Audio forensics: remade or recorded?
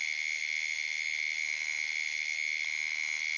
recorded